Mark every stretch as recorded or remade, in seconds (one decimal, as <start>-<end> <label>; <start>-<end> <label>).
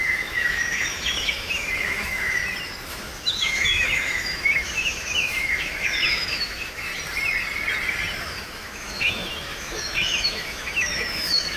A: 0.0-2.4 remade; 2.4-2.9 recorded; 2.9-6.9 remade; 6.9-8.2 recorded; 8.2-11.6 remade